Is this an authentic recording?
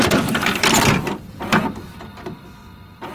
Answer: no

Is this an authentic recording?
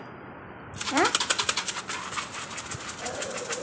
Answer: yes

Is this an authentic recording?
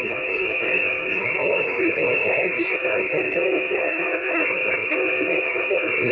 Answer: no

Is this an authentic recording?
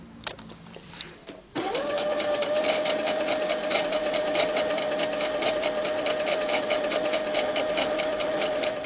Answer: no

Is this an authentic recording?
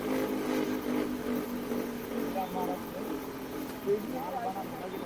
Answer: yes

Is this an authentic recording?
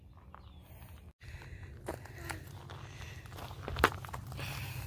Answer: yes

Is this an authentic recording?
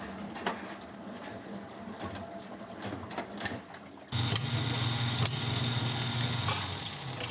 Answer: yes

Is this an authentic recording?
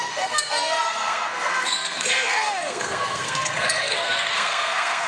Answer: no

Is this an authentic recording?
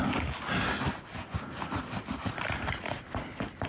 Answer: yes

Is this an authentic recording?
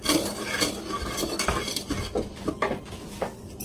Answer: yes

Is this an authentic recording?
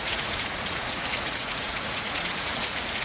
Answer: no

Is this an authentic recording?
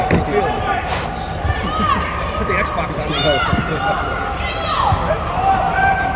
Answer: yes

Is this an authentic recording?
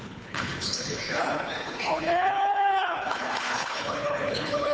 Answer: no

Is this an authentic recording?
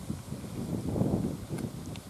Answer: yes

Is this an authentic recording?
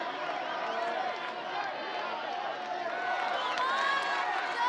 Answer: yes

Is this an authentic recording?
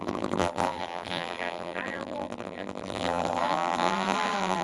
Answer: no